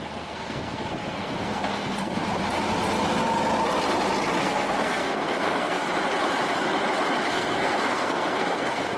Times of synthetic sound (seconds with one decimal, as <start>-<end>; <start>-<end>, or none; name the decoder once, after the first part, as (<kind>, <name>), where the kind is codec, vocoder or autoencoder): 0.0-2.2 (codec, SNAC); 4.4-5.8; 7.3-9.0

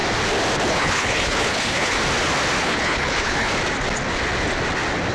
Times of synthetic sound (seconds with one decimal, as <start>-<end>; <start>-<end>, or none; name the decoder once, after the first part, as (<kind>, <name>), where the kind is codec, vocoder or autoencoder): 0.7-2.0 (codec, HILCodec); 2.6-3.5

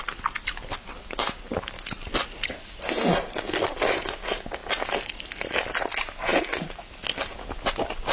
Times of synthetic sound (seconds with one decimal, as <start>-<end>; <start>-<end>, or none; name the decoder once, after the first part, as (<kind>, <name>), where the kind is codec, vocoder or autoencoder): 4.6-5.2 (vocoder, BigVGAN v2)

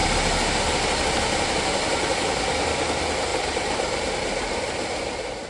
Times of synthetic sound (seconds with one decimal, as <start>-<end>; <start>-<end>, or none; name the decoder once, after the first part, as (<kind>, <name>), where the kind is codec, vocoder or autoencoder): 3.3-4.1 (vocoder, BigVGAN v2)

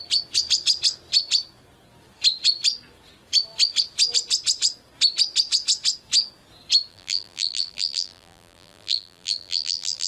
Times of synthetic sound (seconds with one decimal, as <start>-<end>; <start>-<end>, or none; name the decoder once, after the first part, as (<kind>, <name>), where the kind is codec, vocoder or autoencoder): 6.9-10.1 (vocoder, BigVGAN v2)

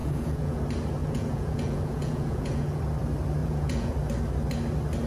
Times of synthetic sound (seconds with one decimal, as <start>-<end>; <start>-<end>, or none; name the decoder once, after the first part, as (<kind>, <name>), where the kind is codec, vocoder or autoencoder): 0.0-0.6 (vocoder, Vocos); 1.0-2.8; 3.4-3.9